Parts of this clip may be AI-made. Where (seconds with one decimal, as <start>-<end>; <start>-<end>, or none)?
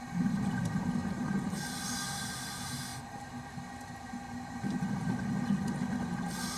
none